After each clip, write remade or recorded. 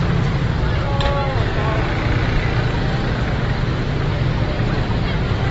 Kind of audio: recorded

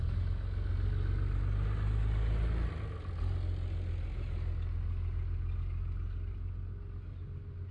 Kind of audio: recorded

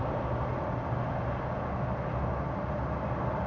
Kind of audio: recorded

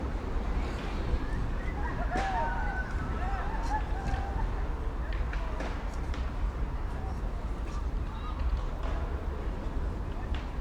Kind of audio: recorded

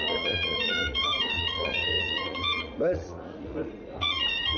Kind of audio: remade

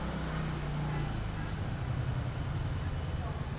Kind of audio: recorded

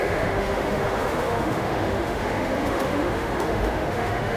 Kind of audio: remade